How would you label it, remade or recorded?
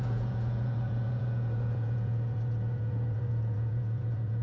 remade